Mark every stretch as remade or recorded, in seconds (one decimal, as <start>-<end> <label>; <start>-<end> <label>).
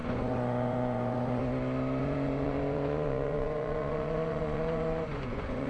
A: 0.0-1.4 remade; 1.4-2.0 recorded; 2.0-5.7 remade